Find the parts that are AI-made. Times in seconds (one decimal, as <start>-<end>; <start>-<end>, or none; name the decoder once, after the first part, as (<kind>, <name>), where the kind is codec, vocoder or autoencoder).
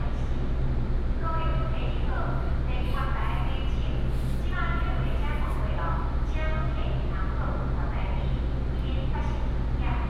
none